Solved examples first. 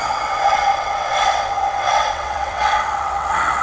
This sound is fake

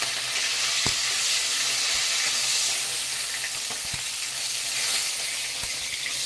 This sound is real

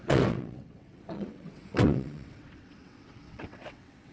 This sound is fake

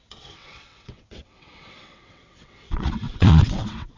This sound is fake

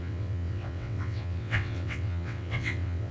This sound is fake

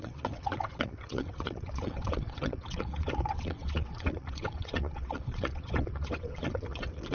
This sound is fake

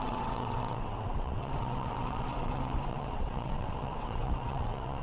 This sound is fake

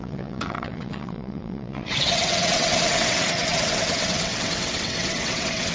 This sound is fake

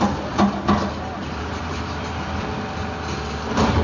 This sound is real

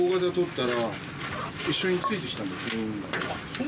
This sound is real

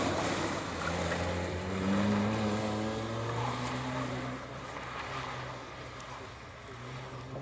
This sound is real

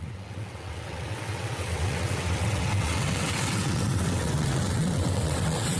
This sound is fake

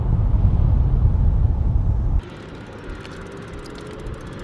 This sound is real